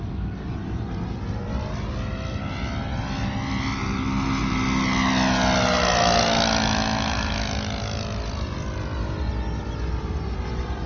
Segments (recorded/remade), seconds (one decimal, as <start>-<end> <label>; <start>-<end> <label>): 0.0-10.9 recorded